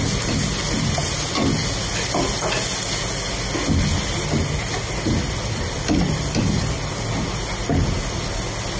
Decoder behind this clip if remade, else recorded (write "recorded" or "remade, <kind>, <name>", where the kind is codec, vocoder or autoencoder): recorded